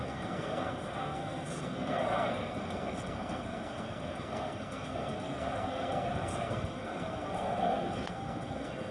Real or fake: fake